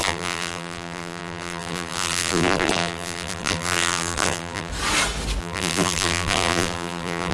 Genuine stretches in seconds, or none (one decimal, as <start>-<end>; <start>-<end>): 4.7-5.4

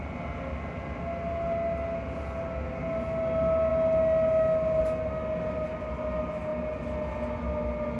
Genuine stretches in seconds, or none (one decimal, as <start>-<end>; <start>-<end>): 0.0-8.0

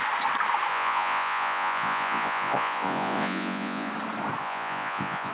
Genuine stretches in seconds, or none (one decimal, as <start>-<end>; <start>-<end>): 0.0-0.7; 3.9-4.4